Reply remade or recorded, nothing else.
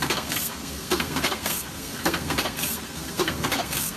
remade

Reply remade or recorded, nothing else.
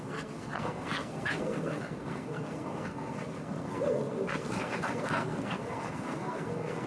remade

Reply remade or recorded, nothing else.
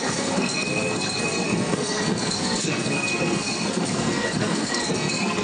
remade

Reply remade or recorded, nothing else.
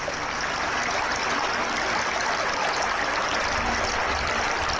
recorded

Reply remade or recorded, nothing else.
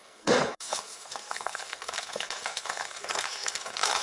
remade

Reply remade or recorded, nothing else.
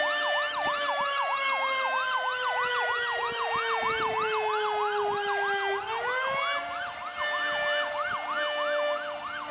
recorded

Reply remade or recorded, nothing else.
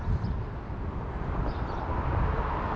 recorded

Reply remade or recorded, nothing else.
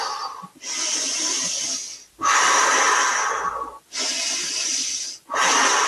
recorded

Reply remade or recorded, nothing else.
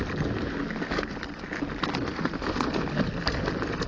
recorded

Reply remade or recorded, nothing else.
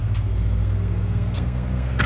remade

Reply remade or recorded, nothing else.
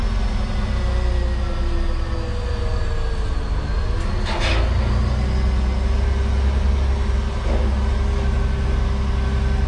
recorded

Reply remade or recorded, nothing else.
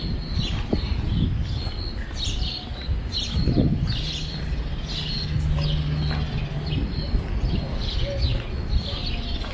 recorded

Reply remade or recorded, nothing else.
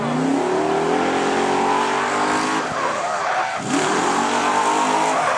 recorded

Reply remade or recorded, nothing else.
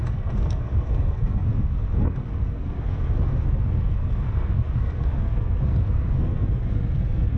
remade